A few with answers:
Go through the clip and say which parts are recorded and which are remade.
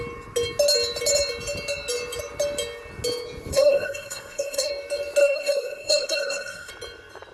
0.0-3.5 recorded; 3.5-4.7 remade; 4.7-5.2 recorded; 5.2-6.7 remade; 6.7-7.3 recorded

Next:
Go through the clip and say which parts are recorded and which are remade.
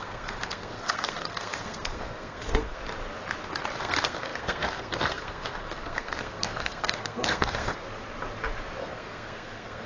0.0-2.8 remade; 2.8-3.8 recorded; 3.8-7.8 remade; 7.8-8.8 recorded; 8.8-9.9 remade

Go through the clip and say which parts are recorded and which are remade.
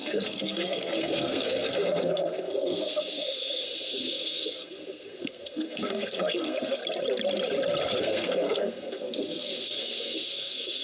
0.0-6.8 remade; 6.8-8.0 recorded; 8.0-10.8 remade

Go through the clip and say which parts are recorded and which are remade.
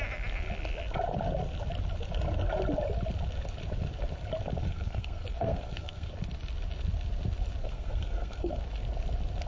0.0-4.6 recorded; 4.6-6.1 remade; 6.1-7.6 recorded; 7.6-8.6 remade; 8.6-9.5 recorded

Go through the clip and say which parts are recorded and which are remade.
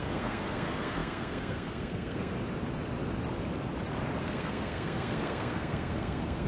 0.0-2.3 remade; 2.3-4.2 recorded; 4.2-6.5 remade